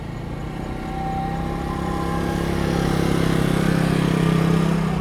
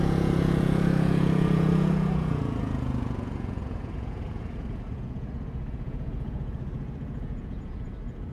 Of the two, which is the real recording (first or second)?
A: first